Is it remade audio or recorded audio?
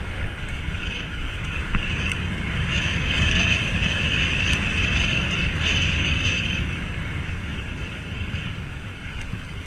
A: remade